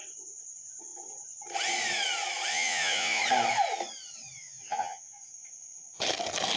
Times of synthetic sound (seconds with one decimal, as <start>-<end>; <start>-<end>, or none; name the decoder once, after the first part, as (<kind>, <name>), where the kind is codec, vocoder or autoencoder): 2.5-3.2 (vocoder, Vocos); 4.4-5.2